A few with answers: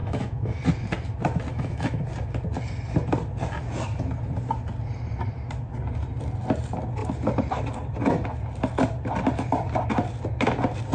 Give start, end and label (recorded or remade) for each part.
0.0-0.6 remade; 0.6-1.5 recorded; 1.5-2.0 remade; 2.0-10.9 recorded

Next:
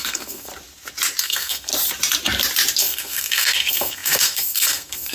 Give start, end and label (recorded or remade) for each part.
0.0-0.5 remade; 0.5-1.2 recorded; 1.2-1.7 remade; 1.7-2.8 recorded; 2.8-5.1 remade

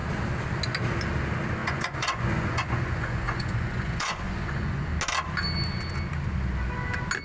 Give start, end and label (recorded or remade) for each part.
0.0-1.6 recorded; 1.6-4.9 remade; 4.9-7.2 recorded

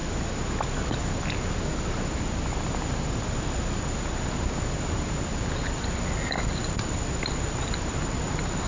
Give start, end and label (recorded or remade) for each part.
0.0-8.7 recorded

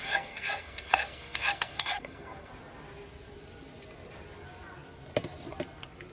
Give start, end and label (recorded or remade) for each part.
0.0-2.5 remade; 2.5-6.1 recorded